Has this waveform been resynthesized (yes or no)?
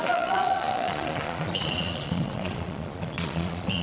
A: yes